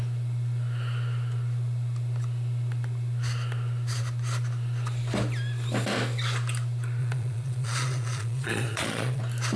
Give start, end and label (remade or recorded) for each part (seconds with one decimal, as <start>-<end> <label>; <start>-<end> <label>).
0.0-7.0 recorded; 7.0-9.2 remade; 9.2-9.6 recorded